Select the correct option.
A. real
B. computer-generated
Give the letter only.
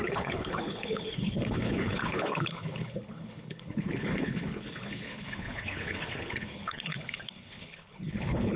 B